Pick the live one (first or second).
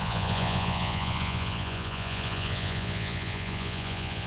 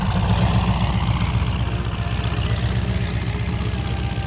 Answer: second